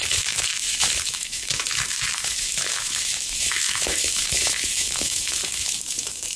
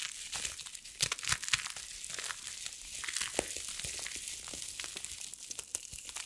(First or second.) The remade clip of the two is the first